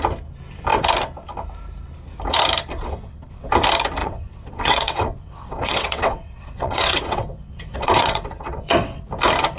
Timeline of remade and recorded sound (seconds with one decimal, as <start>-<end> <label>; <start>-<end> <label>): 0.0-2.7 recorded; 2.7-3.5 remade; 3.5-4.0 recorded; 4.0-9.0 remade; 9.0-9.6 recorded